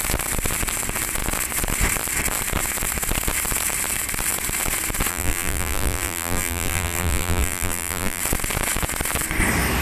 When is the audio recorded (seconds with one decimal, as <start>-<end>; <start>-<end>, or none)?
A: 0.0-5.1; 8.2-9.8